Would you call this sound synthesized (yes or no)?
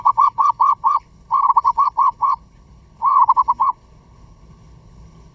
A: yes